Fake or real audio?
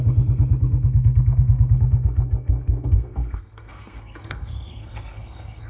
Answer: fake